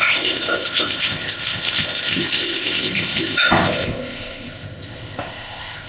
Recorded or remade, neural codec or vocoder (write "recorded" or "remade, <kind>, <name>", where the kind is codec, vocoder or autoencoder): remade, codec, ZipCodec